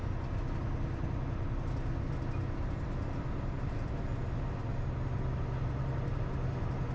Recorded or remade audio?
recorded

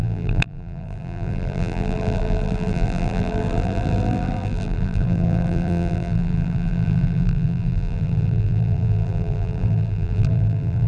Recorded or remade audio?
remade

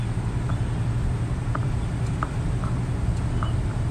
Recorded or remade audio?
recorded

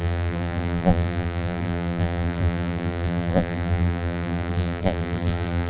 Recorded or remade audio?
remade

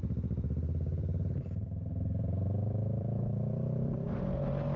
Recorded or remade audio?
remade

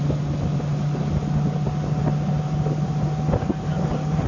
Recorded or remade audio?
recorded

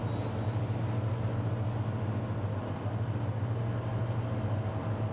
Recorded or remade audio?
recorded